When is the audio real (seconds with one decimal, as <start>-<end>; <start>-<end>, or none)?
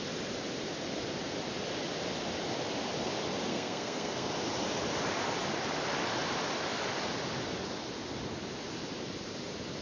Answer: 0.0-3.5; 4.3-9.8